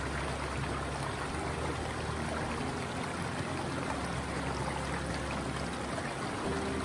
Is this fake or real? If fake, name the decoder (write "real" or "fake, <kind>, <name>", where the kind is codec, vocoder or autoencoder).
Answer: real